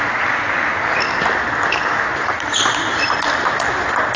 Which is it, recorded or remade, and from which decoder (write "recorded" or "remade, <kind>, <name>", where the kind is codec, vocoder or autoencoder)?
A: recorded